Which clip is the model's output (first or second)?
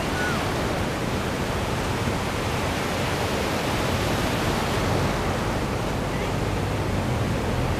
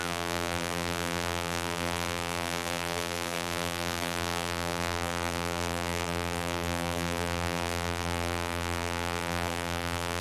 second